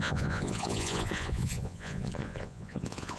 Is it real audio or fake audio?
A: fake